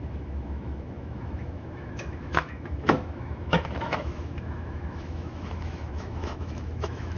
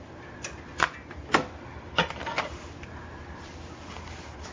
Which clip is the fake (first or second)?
first